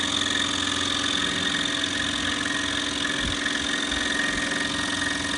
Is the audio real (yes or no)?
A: yes